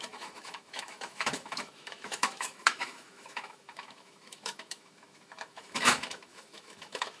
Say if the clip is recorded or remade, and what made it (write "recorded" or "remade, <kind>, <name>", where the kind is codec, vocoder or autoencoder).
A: remade, autoencoder, DAC-VAE